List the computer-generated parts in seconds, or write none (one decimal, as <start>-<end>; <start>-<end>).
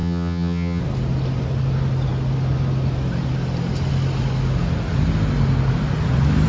0.0-0.8